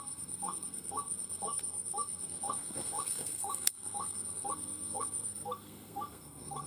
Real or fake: fake